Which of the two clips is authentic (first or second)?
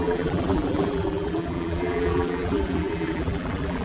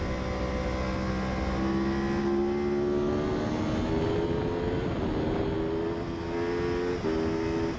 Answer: second